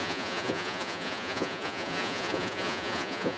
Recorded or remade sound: remade